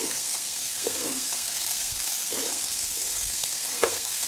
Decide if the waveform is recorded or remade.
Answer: remade